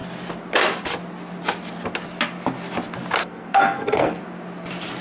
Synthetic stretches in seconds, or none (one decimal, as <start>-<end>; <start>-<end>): 3.2-4.2